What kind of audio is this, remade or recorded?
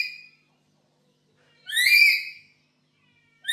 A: recorded